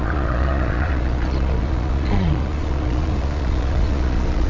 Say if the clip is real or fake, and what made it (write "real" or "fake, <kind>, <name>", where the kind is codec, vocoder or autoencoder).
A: fake, vocoder, Vocos